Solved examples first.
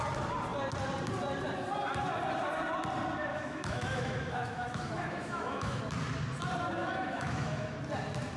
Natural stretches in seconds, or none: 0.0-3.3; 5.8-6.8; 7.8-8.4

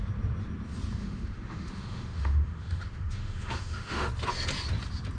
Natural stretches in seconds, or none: 0.0-1.0; 4.1-5.2

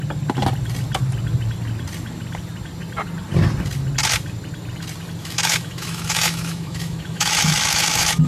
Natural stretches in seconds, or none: 0.0-5.2